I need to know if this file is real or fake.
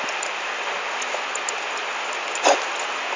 real